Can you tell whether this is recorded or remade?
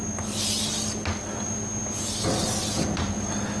recorded